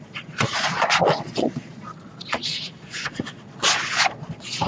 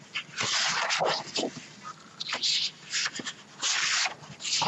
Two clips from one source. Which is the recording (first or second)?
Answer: second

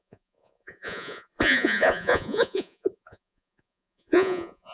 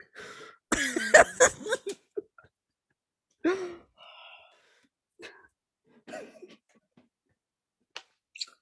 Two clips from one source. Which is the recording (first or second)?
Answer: second